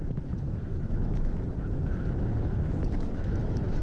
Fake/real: fake